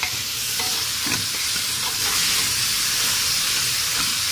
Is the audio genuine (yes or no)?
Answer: yes